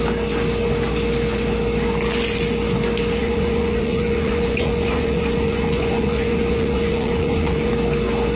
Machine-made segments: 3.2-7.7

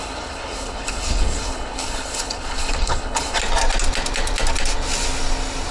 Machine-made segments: 0.0-3.4

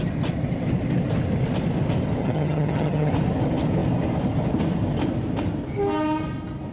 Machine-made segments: 2.2-3.1

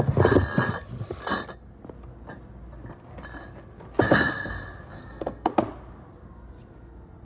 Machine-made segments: 5.0-5.5

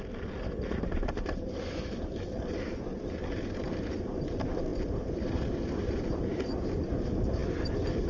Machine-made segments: 0.0-8.1

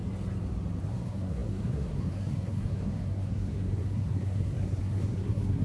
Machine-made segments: 0.8-5.6

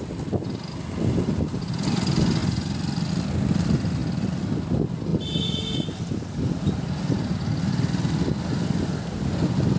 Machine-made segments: none

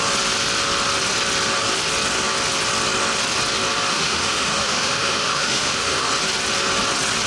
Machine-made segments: 3.9-6.1